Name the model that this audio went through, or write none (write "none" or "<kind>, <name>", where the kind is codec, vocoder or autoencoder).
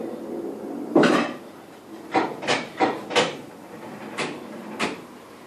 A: vocoder, BigVGAN v2